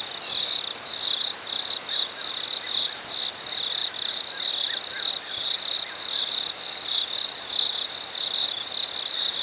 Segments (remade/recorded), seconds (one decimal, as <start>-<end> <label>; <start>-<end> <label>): 0.0-9.4 recorded